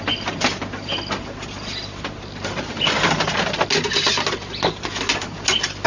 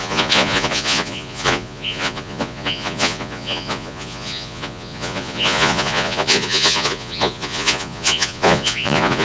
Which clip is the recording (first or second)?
first